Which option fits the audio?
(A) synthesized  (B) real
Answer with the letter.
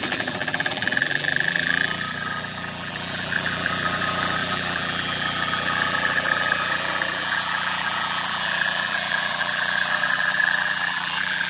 A